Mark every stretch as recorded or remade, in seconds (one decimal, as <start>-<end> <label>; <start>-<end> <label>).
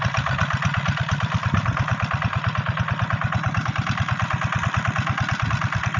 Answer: 0.0-6.0 recorded